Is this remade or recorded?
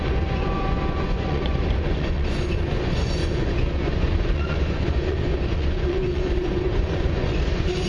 remade